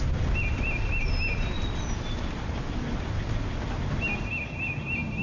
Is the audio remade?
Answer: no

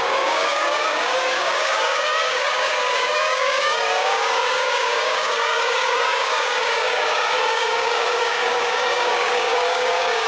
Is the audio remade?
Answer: yes